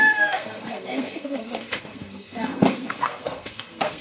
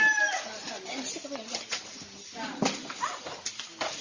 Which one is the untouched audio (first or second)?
second